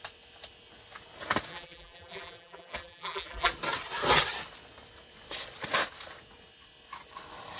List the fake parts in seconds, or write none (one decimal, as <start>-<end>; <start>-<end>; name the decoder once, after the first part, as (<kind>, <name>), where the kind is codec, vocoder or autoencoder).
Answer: 1.5-3.5 (vocoder, BigVGAN v2)